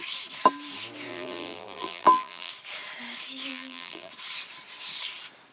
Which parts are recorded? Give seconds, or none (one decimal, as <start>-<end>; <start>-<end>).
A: 0.0-1.1; 2.5-3.5; 4.1-5.5